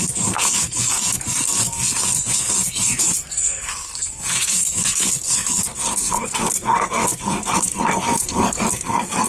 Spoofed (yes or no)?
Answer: yes